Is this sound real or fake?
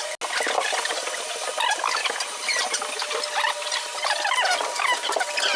real